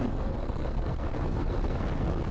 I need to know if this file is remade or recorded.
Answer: remade